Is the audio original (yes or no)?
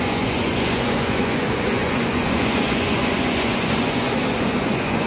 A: no